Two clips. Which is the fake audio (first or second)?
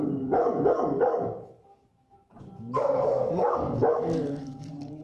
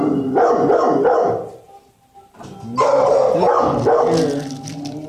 first